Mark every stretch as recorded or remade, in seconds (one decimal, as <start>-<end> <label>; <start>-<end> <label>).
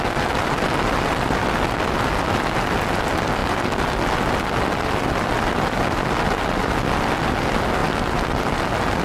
0.0-9.0 recorded